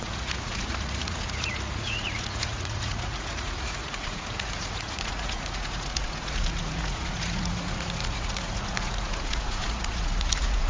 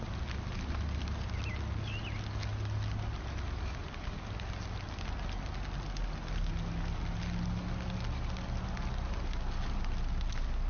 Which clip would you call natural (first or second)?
second